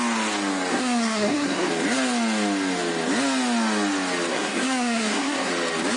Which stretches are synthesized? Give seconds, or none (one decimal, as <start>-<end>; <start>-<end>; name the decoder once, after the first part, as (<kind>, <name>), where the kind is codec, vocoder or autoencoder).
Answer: 0.7-1.7 (codec, SNAC); 4.3-5.5